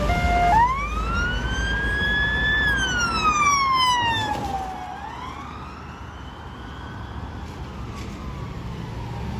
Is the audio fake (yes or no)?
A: no